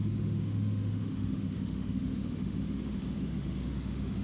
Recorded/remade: remade